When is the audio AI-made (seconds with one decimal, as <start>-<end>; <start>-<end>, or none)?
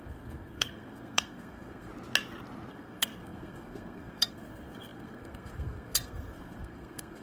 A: 0.0-1.9; 2.7-7.2